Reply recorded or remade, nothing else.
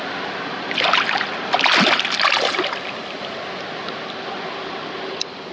recorded